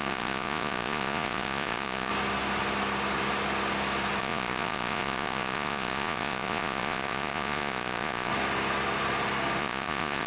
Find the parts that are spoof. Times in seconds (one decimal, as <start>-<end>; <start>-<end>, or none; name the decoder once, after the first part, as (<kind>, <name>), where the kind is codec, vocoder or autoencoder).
0.0-2.1 (vocoder, Vocos); 4.2-8.3; 9.6-10.3